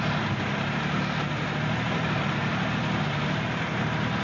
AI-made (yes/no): no